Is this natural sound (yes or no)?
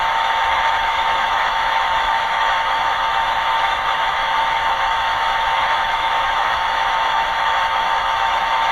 no